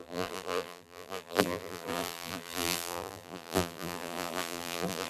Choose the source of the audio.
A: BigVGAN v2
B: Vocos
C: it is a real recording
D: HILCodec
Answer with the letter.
A